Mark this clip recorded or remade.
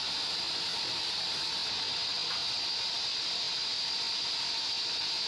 recorded